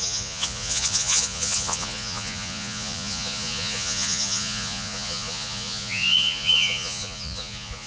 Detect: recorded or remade remade